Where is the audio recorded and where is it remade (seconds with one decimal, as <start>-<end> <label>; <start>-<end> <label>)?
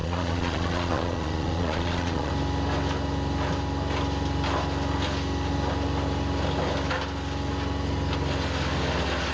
0.0-2.3 remade; 2.3-9.3 recorded